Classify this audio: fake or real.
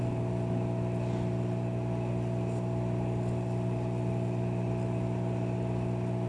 real